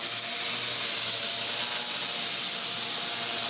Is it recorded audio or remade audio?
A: recorded